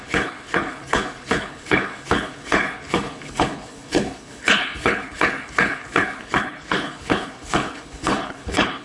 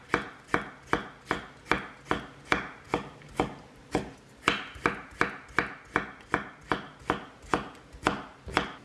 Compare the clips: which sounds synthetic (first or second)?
first